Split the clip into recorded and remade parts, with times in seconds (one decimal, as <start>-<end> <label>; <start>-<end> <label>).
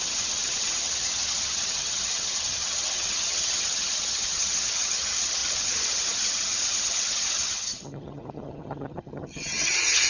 0.0-10.1 remade